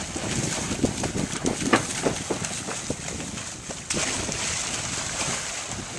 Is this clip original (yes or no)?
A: yes